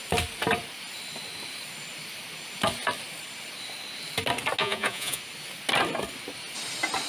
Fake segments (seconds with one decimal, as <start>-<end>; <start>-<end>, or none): 4.6-5.2